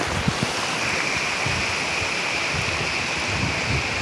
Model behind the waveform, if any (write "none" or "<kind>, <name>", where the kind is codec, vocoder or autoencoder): none